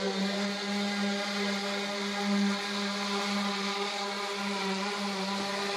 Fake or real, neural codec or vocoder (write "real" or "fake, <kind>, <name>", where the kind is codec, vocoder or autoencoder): real